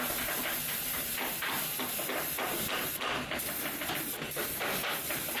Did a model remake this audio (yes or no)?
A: no